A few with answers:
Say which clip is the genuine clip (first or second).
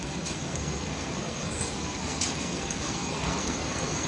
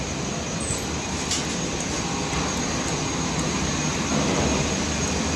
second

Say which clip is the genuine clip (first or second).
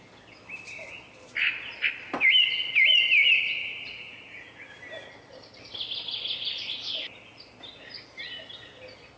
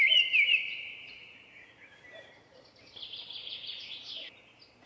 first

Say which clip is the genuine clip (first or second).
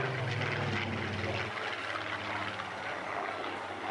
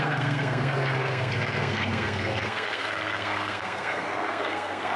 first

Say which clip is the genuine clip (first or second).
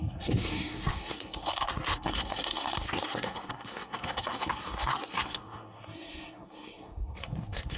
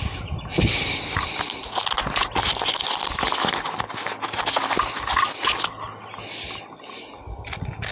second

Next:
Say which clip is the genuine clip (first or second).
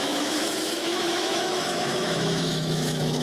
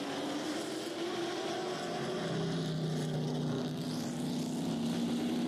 second